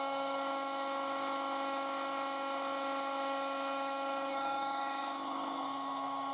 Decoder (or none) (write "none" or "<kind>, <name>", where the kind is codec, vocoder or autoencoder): autoencoder, DAC-VAE